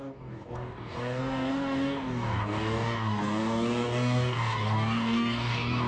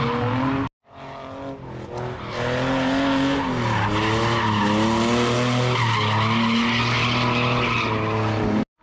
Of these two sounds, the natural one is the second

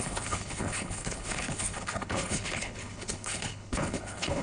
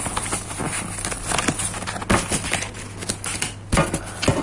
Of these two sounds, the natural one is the second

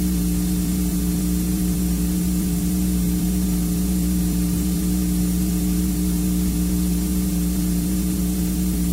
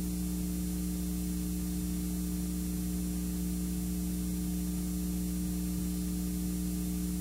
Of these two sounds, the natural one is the second